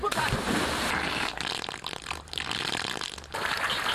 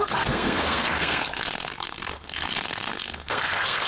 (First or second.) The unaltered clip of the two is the first